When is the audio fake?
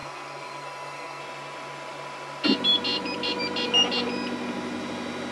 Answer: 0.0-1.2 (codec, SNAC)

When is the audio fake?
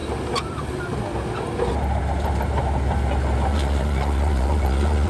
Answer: 3.5-5.1 (vocoder, Vocos)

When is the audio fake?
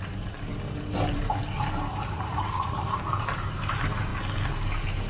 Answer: 0.0-4.1 (vocoder, BigVGAN v2)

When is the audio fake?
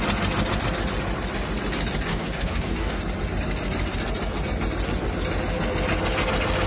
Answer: 2.1-3.0 (codec, DAC)